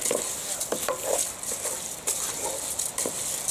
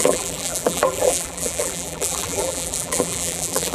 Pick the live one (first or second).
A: first